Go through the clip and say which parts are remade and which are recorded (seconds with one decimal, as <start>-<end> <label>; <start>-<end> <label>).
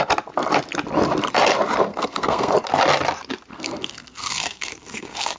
0.0-1.9 recorded; 1.9-2.5 remade; 2.5-3.5 recorded; 3.5-5.4 remade